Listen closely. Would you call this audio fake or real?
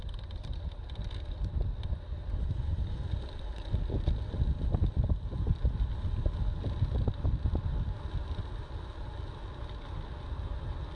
real